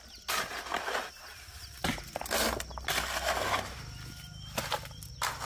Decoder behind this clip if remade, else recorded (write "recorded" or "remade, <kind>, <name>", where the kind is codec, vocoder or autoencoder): recorded